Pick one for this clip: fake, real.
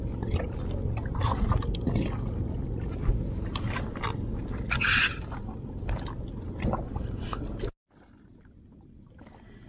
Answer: real